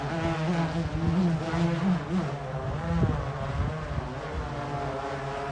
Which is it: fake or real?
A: real